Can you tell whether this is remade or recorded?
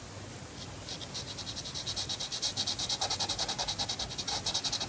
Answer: recorded